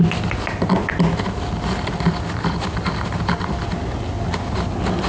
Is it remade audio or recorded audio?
recorded